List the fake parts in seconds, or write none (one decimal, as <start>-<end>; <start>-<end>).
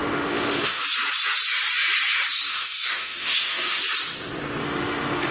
0.0-0.8; 2.5-3.8; 4.6-5.3